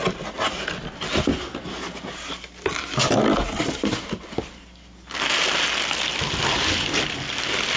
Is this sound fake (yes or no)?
no